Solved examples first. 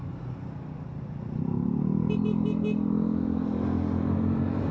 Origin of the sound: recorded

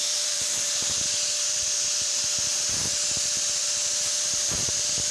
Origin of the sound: recorded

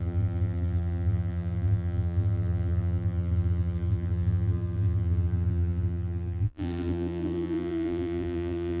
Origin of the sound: remade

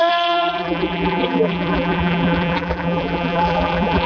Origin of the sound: remade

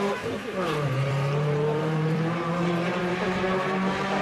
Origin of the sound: remade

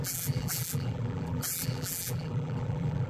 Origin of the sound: remade